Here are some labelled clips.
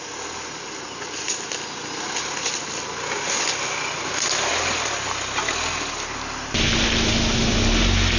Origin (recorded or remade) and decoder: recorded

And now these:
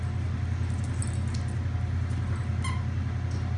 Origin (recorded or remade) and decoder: recorded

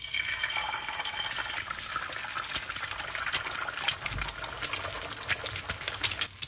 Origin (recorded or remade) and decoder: recorded